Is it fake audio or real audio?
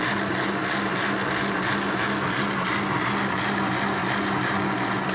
real